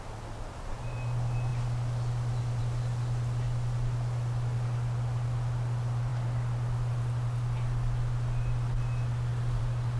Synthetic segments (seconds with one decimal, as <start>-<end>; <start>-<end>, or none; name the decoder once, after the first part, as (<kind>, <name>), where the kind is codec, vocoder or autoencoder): none